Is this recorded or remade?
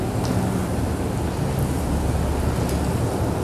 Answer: recorded